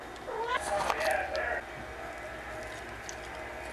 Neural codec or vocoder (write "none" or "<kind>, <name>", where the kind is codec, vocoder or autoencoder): none